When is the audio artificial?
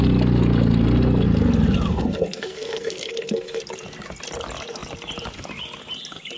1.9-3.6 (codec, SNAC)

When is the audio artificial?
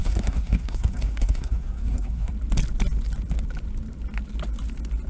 0.0-2.3 (codec, SNAC)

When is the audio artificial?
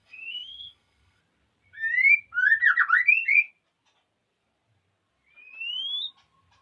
0.0-1.2 (codec, SNAC)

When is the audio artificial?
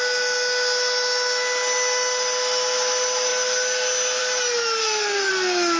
4.8-5.3 (codec, SNAC)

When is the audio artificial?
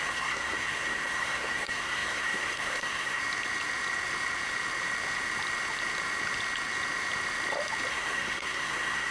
0.0-3.2 (codec, SNAC); 7.9-9.1